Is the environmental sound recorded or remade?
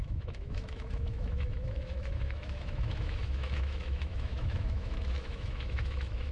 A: remade